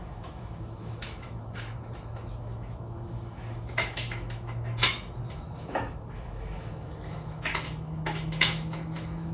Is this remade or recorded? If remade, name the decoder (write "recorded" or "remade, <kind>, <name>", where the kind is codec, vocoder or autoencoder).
remade, autoencoder, DAC-VAE